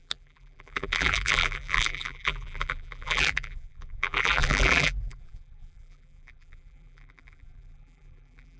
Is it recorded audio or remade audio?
remade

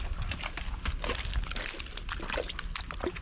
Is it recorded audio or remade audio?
recorded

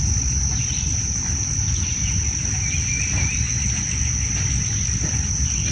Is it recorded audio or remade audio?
recorded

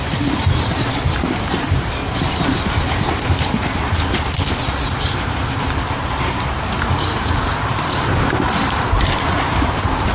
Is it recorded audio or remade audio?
remade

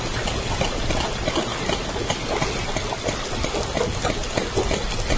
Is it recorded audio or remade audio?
recorded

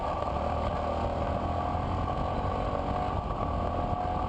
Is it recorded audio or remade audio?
recorded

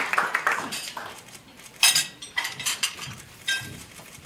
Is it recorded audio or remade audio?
remade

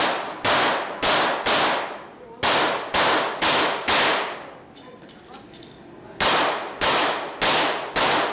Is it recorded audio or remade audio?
recorded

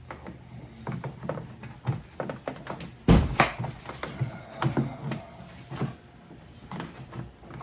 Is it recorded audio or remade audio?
recorded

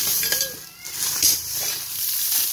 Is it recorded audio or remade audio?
remade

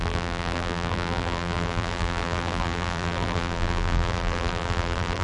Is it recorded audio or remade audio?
remade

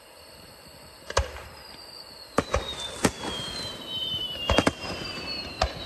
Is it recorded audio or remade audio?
remade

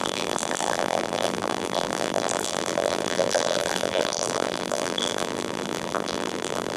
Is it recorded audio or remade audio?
remade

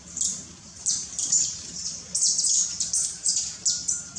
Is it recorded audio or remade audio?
remade